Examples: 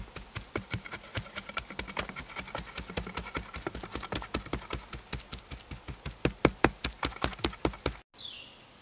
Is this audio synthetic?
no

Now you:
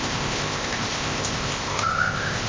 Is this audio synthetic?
yes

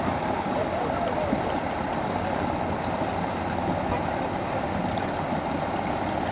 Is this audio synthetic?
no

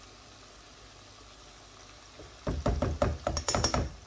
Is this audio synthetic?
no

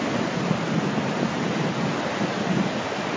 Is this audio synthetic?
no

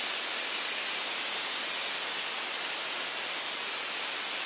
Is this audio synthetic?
no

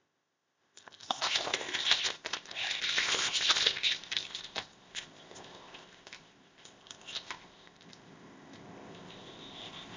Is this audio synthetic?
yes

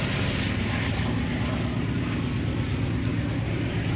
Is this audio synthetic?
no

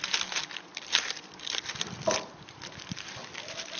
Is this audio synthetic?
no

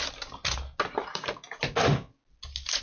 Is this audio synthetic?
no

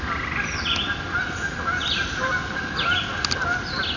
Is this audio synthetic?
no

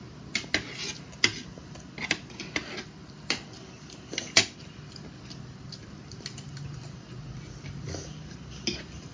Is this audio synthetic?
no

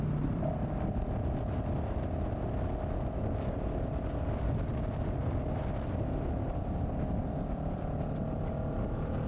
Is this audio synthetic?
no